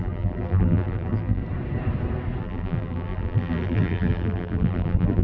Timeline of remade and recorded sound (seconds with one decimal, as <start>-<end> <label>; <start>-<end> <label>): 0.0-1.4 remade; 1.4-2.4 recorded; 2.4-5.2 remade